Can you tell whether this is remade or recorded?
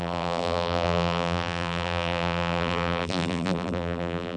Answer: remade